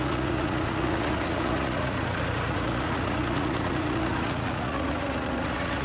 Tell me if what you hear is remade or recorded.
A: remade